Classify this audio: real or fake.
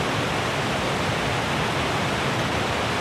real